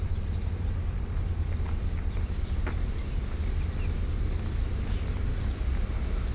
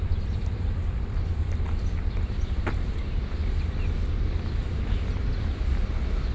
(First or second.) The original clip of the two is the first